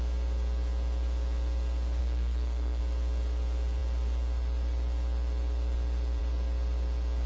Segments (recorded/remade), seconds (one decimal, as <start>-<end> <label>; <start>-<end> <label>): 0.0-2.0 recorded; 2.0-2.8 remade; 2.8-7.3 recorded